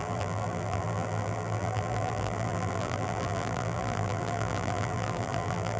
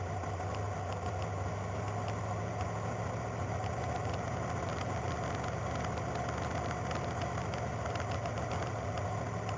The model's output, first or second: first